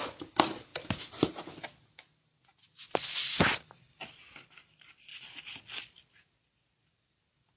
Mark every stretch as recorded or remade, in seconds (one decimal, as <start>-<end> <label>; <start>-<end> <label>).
0.0-0.7 recorded; 0.7-1.6 remade; 1.6-7.6 recorded